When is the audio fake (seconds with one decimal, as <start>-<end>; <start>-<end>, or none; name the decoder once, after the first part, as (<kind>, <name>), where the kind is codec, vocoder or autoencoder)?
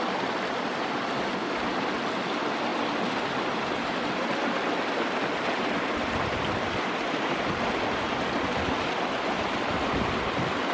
none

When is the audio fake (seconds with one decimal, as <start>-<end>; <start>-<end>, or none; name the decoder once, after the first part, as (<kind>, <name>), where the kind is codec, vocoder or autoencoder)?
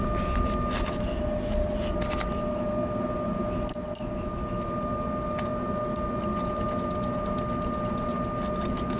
none